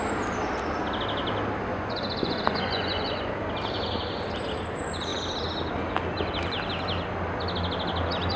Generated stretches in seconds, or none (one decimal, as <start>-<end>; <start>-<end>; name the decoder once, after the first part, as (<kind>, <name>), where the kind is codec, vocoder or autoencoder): 1.7-3.3 (vocoder, Vocos)